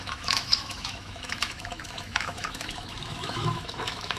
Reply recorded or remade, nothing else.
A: remade